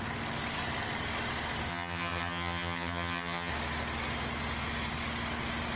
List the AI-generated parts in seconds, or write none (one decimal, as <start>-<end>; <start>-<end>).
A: 1.7-3.5